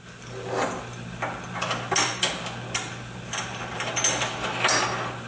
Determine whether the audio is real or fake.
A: real